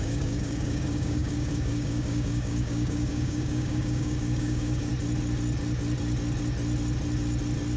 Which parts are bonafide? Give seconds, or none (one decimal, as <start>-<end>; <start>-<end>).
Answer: 4.9-7.8